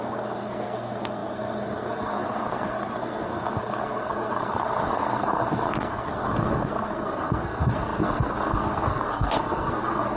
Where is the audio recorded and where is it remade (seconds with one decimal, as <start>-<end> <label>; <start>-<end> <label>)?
0.0-10.2 remade